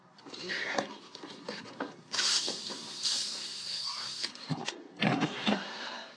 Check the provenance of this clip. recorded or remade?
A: remade